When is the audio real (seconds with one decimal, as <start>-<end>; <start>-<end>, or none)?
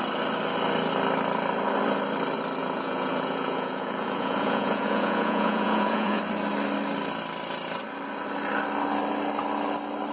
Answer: 0.0-2.6; 6.2-10.1